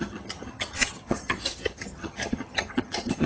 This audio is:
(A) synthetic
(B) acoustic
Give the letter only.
A